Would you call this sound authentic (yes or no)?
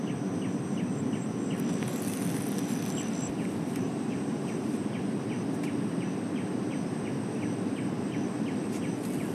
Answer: yes